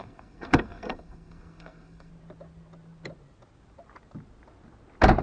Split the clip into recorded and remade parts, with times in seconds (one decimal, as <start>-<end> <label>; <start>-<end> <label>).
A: 0.0-2.1 remade; 2.1-5.2 recorded